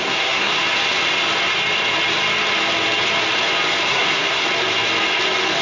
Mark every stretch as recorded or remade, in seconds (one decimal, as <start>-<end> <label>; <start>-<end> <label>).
0.0-0.5 remade; 0.5-3.9 recorded; 3.9-4.4 remade; 4.4-5.6 recorded